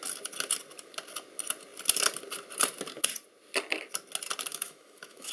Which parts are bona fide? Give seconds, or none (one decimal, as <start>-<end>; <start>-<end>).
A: 0.0-4.5